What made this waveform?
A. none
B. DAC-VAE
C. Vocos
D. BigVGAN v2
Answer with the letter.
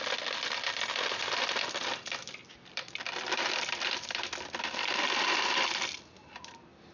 D